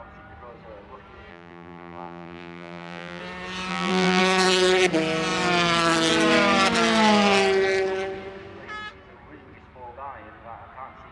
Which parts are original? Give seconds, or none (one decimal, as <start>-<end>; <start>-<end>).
0.0-1.3; 3.2-3.7; 4.2-11.1